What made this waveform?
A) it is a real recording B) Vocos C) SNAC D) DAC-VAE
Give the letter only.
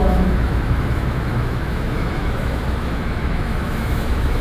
D